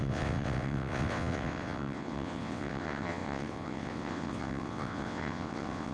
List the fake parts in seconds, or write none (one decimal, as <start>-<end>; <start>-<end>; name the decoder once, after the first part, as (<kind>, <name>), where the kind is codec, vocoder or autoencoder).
0.0-5.9 (vocoder, WaveNeXt)